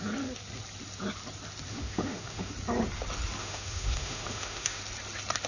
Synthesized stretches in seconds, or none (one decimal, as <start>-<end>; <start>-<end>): 1.7-2.5; 3.4-4.8